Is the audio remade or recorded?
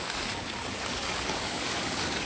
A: remade